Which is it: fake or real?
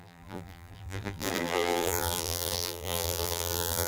fake